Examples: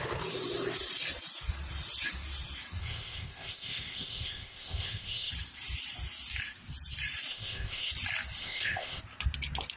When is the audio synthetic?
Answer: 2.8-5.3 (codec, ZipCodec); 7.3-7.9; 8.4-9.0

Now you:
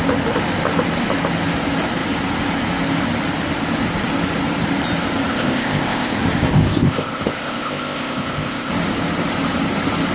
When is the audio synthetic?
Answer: 5.3-6.1 (codec, ZipCodec); 6.5-8.7

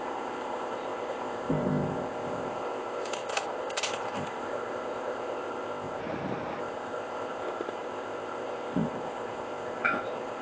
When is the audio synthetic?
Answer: 0.0-6.0 (codec, ZipCodec); 6.6-10.4

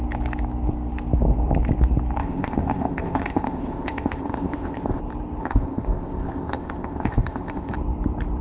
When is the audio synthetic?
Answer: 2.2-5.0 (codec, ZipCodec); 5.4-7.7

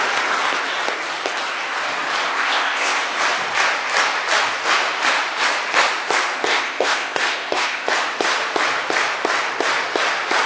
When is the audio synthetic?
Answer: 2.3-3.0 (codec, ZipCodec); 6.5-7.9